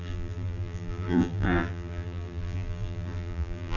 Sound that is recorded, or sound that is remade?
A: remade